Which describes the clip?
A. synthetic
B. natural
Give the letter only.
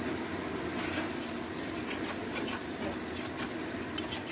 B